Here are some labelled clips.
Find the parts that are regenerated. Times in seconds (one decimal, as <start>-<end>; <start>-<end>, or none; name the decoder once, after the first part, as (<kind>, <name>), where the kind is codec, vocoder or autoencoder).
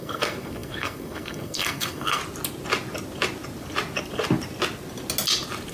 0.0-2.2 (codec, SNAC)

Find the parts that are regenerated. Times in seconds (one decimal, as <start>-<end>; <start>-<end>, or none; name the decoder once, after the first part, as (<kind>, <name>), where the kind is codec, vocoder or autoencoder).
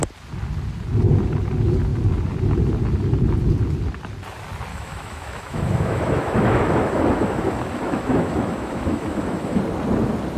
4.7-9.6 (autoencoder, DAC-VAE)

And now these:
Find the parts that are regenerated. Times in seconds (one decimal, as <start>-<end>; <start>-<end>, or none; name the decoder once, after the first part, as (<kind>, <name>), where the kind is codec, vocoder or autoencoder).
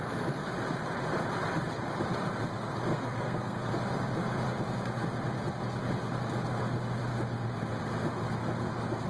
2.9-3.7 (codec, SNAC)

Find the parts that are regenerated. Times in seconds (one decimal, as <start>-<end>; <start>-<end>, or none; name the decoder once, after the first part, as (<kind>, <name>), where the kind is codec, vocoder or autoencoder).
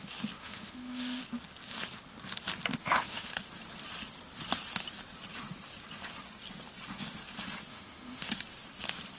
0.4-1.2 (autoencoder, DAC-VAE); 2.8-3.3; 7.7-8.3